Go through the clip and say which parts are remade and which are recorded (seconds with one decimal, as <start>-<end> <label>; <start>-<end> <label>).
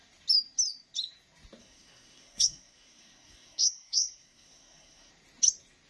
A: 0.0-1.6 recorded; 1.6-5.1 remade; 5.1-5.9 recorded